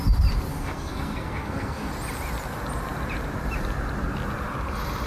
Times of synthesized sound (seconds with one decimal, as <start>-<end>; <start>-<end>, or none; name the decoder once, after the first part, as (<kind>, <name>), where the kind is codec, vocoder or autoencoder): 0.5-1.9 (codec, SNAC)